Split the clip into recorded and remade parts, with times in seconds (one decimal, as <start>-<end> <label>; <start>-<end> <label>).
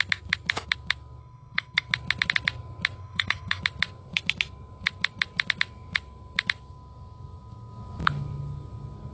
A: 0.0-1.2 recorded; 1.2-1.9 remade; 1.9-3.0 recorded; 3.0-3.6 remade; 3.6-9.1 recorded